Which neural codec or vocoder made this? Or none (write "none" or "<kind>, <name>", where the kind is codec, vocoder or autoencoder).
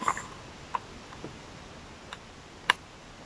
none